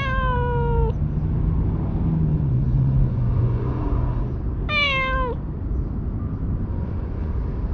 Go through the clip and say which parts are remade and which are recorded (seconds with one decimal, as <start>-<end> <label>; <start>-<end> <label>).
0.0-2.3 recorded; 2.3-4.2 remade; 4.2-6.7 recorded; 6.7-7.3 remade; 7.3-7.7 recorded